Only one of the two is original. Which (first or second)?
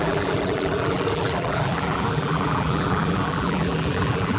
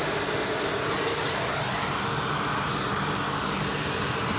second